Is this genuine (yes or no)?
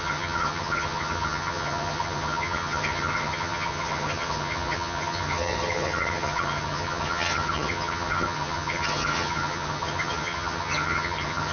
no